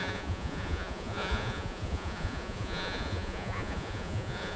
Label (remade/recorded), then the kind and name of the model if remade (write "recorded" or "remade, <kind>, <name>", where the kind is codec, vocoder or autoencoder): remade, vocoder, Vocos